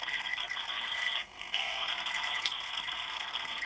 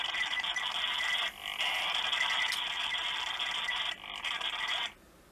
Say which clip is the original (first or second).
second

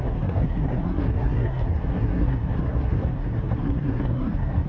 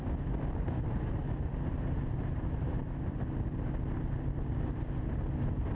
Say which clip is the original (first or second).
second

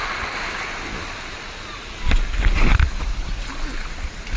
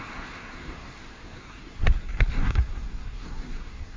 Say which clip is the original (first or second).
first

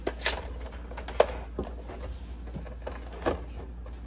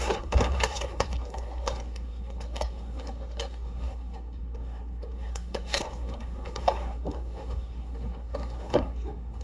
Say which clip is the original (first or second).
first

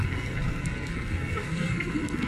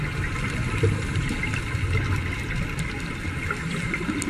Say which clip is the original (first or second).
second